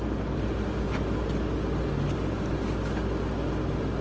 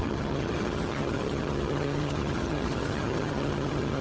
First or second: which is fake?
second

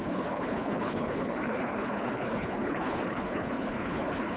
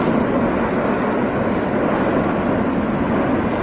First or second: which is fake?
first